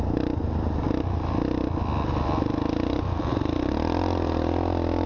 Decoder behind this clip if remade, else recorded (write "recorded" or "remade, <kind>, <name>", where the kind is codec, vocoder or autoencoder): recorded